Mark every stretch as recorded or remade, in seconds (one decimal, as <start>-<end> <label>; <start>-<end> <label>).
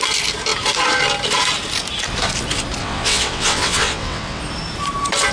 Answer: 0.0-2.8 recorded; 2.8-4.4 remade; 4.4-5.3 recorded